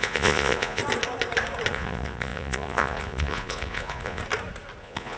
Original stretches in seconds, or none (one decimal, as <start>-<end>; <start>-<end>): 0.8-1.7; 4.2-4.8